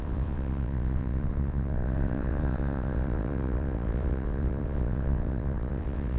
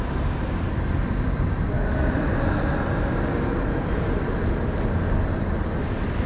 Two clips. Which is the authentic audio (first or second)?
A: second